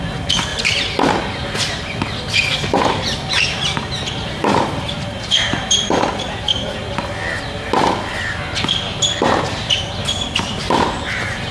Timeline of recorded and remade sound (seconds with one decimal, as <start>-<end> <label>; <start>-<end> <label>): 0.0-0.5 remade; 0.5-2.8 recorded; 2.8-6.8 remade; 6.8-9.6 recorded; 9.6-11.5 remade